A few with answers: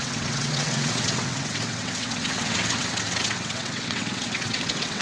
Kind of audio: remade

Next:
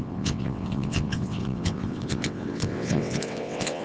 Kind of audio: remade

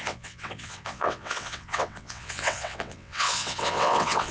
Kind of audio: remade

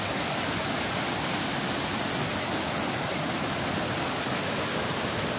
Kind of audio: recorded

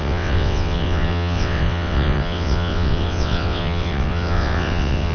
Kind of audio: remade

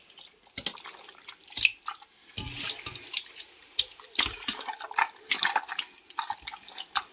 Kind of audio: recorded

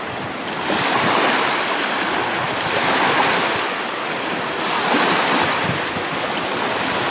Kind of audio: recorded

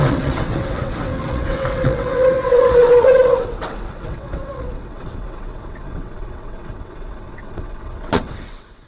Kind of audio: remade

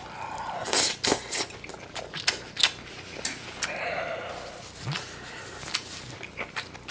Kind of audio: recorded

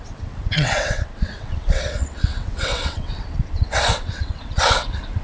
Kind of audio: remade